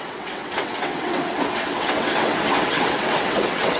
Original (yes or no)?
no